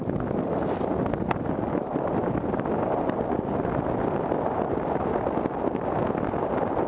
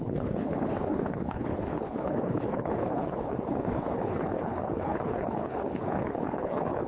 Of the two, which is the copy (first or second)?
second